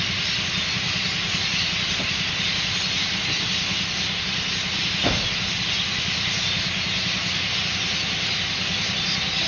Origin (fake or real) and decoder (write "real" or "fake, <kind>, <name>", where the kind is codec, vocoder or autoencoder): real